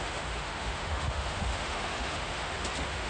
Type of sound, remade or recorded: remade